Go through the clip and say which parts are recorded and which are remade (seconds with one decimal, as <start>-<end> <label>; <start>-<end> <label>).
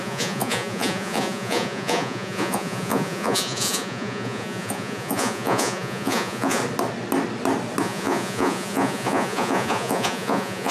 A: 0.0-6.6 remade; 6.6-7.8 recorded; 7.8-10.7 remade